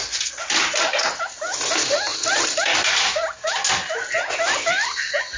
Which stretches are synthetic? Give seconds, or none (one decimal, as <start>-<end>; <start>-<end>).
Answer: none